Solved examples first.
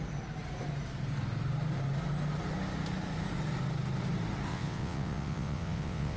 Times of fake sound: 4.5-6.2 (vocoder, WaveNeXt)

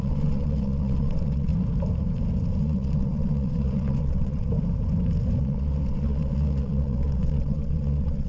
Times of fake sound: 0.0-1.5 (vocoder, WaveNeXt); 2.6-4.5; 5.4-8.3